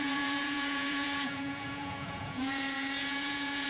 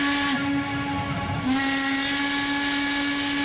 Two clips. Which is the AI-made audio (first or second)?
first